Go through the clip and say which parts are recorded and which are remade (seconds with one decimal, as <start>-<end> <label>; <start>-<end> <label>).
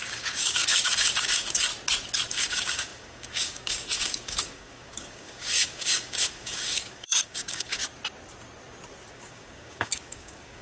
0.0-1.7 remade; 1.7-2.3 recorded; 2.3-7.8 remade; 7.8-9.1 recorded; 9.1-10.6 remade